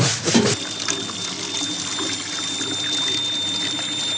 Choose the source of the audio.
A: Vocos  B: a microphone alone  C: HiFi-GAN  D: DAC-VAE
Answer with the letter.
B